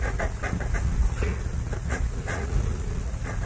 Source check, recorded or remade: remade